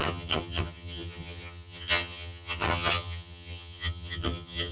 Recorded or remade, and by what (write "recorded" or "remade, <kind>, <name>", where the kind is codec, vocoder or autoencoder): remade, vocoder, HiFi-GAN